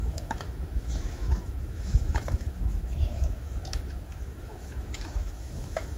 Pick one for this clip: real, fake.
fake